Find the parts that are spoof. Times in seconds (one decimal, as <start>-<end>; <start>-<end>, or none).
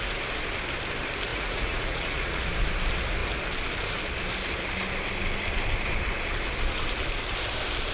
1.3-2.5